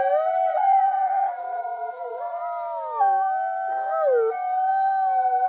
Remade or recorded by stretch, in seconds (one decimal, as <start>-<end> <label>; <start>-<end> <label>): 0.0-0.5 recorded; 0.5-2.4 remade; 2.4-5.5 recorded